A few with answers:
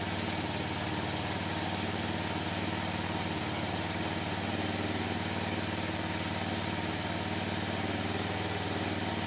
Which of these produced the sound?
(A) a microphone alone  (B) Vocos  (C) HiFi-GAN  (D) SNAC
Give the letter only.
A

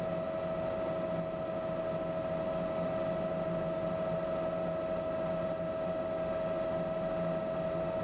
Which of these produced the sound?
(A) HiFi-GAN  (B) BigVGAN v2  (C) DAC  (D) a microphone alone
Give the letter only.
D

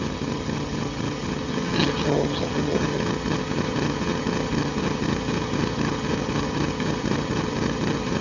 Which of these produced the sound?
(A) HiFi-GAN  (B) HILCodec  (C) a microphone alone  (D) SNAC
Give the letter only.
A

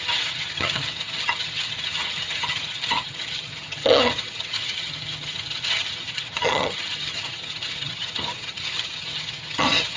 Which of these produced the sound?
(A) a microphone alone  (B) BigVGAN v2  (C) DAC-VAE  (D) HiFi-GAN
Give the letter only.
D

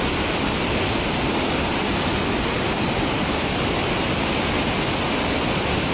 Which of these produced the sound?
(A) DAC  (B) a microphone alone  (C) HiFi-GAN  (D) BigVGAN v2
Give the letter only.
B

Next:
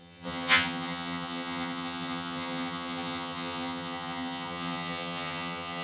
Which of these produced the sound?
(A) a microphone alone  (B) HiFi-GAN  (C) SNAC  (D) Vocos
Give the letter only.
B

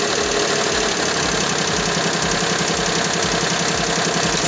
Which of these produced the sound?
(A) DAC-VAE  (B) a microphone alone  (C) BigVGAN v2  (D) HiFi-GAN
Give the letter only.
B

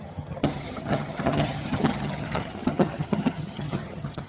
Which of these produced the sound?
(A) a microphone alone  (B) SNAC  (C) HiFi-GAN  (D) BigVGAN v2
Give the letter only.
C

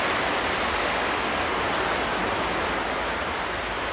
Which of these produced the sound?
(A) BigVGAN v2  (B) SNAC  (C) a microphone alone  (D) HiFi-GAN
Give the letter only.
C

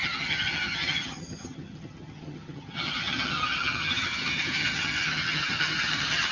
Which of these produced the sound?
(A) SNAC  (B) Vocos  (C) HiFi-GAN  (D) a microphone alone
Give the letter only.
C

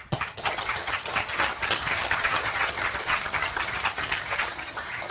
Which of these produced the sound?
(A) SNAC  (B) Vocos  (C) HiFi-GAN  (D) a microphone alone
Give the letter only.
C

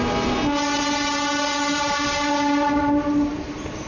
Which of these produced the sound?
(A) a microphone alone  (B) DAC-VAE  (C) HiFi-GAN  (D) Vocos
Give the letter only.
A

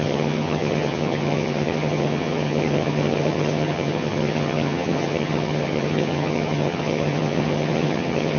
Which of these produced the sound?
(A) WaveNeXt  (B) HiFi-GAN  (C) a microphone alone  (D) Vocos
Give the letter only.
B